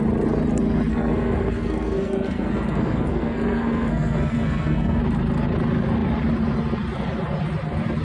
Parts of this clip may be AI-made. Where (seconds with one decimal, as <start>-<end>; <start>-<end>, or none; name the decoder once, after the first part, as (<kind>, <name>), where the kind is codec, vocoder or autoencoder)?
0.9-5.0 (codec, SNAC)